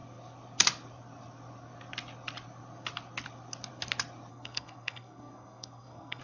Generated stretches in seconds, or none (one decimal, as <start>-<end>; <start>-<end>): 4.3-6.2